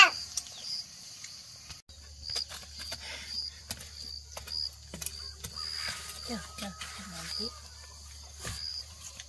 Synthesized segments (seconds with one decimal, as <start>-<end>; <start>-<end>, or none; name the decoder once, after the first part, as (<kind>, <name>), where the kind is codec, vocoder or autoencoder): 0.0-1.4 (vocoder, BigVGAN v2); 2.5-3.6; 8.7-9.3